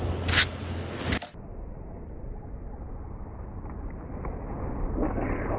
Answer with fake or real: real